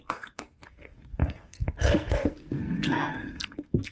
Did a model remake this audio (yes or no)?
yes